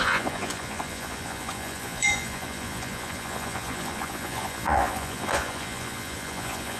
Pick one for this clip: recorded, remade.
remade